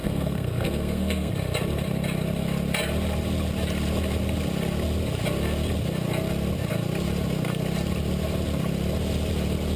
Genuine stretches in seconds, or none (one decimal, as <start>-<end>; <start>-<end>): 1.3-9.8

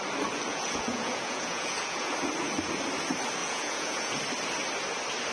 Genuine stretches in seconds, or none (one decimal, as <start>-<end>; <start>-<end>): 0.0-0.5; 2.1-3.4; 4.2-5.3

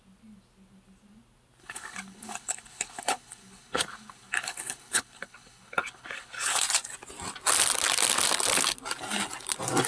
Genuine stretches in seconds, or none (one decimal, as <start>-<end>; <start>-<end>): 0.0-1.6; 6.6-9.9